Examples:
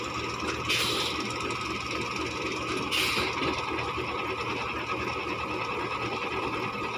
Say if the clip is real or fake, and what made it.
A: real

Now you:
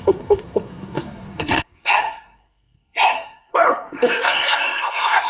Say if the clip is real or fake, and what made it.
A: fake, codec, SNAC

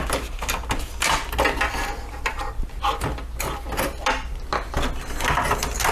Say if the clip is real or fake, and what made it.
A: real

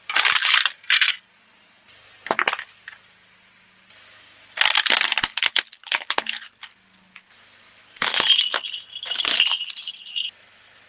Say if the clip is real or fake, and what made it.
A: real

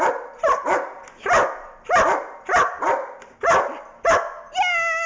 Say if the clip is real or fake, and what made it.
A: real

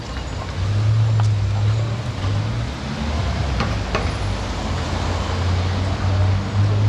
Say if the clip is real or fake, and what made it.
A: real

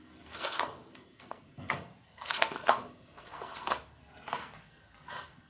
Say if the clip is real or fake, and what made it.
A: fake, codec, SNAC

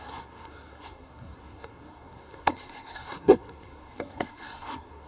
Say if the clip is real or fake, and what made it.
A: fake, codec, SNAC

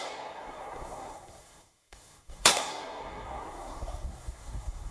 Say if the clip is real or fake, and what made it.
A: fake, codec, SNAC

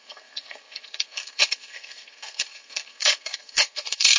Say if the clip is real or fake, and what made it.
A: fake, codec, SNAC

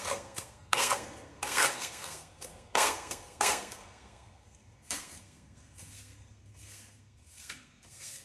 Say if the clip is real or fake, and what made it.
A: fake, codec, SNAC